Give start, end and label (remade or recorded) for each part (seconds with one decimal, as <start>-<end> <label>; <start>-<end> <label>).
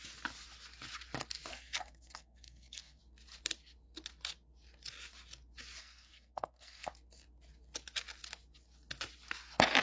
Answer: 0.0-1.5 recorded; 1.5-3.0 remade; 3.0-5.8 recorded; 5.8-6.9 remade; 6.9-9.8 recorded